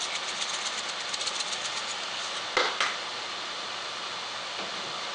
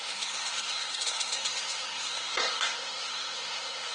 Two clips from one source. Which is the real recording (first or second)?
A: first